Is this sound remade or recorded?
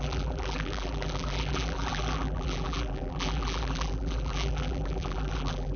remade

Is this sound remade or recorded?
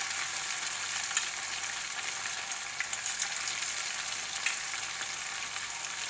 recorded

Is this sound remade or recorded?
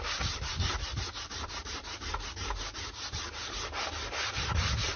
remade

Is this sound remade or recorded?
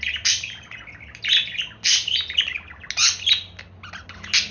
recorded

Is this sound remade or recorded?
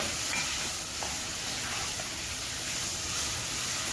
recorded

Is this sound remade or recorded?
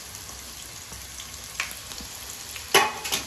recorded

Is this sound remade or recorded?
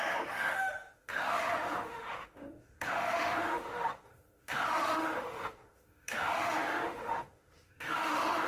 remade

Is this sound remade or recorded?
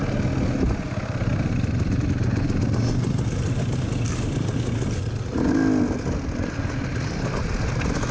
recorded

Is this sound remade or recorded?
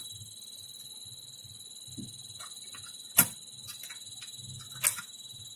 recorded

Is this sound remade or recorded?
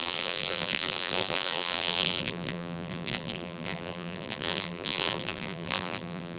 remade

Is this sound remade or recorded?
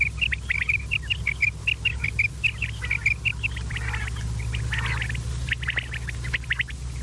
recorded